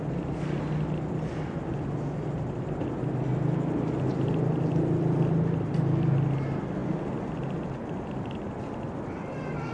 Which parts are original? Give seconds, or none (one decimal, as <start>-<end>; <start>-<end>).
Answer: 0.0-9.7